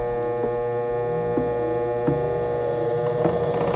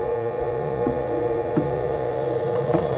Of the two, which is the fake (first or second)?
second